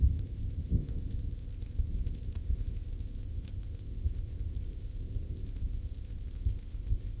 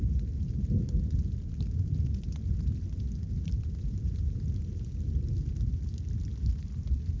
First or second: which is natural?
second